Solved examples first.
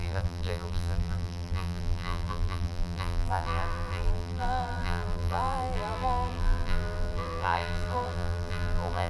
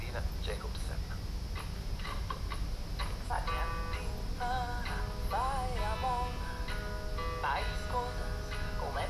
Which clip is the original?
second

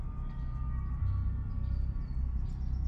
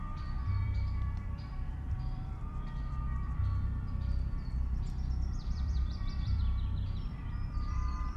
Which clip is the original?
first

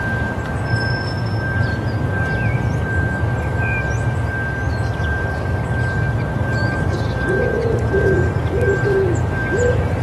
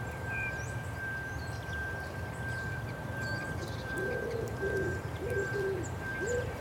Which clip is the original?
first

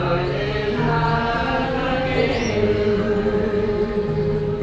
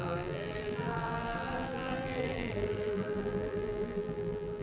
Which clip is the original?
first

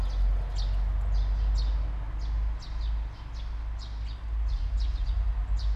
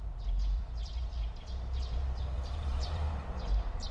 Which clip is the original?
first